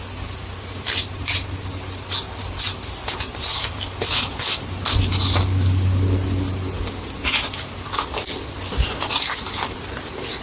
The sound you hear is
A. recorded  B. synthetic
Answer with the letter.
A